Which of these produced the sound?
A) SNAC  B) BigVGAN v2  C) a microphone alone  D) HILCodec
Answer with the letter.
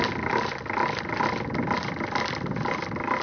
C